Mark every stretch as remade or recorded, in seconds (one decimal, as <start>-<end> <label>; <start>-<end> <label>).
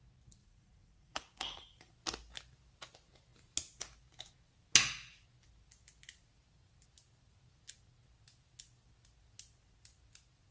0.0-0.4 recorded; 0.4-1.9 remade; 1.9-10.5 recorded